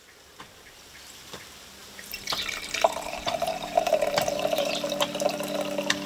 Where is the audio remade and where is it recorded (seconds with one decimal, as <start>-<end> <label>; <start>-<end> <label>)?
0.0-1.8 recorded; 1.8-4.7 remade; 4.7-6.1 recorded